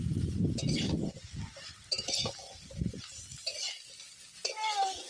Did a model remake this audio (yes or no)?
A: no